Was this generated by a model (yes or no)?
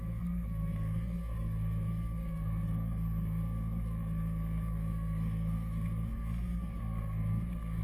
yes